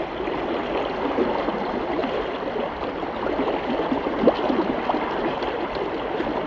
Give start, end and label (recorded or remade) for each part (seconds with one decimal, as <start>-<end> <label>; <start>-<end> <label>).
0.0-6.5 recorded